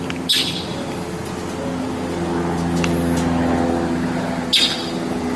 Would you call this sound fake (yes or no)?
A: no